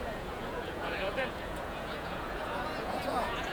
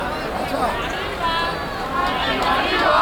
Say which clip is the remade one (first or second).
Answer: first